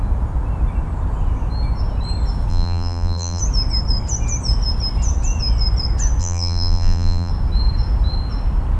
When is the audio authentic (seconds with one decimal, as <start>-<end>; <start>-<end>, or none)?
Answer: 0.0-2.5; 3.4-6.2; 7.3-8.8

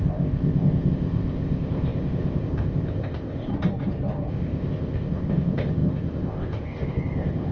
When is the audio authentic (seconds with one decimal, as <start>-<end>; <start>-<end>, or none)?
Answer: 3.5-4.3

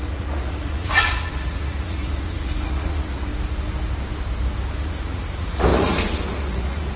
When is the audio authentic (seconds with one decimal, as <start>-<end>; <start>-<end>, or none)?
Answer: 3.3-4.8

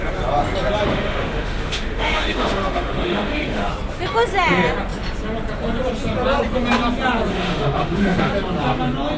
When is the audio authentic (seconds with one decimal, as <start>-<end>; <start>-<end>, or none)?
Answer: 0.0-0.9; 3.7-7.3; 8.3-9.2